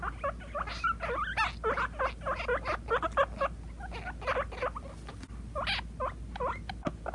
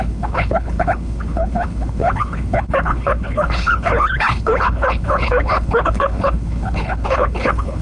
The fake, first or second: second